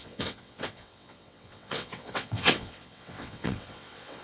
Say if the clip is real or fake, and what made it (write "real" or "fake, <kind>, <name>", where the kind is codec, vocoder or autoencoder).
fake, vocoder, WaveNeXt